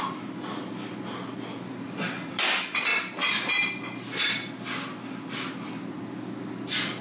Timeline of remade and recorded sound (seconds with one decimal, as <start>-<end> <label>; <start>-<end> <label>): 0.0-7.0 recorded